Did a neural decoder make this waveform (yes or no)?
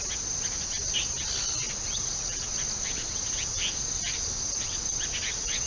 no